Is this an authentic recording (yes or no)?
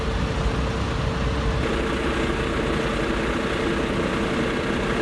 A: yes